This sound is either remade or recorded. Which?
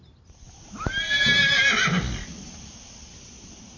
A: recorded